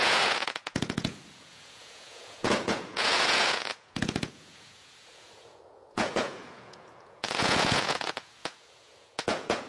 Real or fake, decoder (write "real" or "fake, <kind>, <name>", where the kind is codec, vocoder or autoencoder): fake, vocoder, Vocos